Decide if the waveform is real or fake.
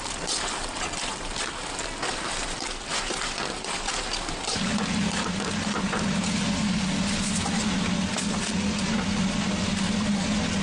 real